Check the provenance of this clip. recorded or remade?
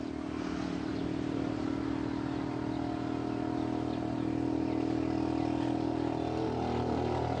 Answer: recorded